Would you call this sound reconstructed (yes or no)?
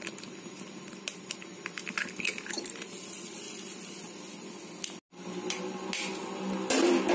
no